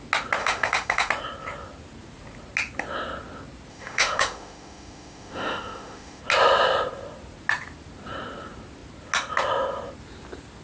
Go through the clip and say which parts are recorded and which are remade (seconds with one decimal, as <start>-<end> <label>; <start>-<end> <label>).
0.0-0.4 recorded; 0.4-1.1 remade; 1.1-3.7 recorded; 3.7-6.2 remade; 6.2-10.6 recorded